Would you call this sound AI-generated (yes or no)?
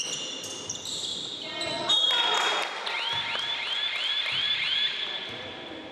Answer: no